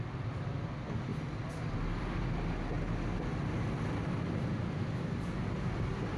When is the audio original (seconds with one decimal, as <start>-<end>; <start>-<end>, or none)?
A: 0.0-6.2